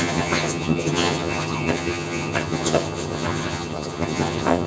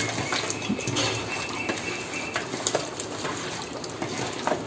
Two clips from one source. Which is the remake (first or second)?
first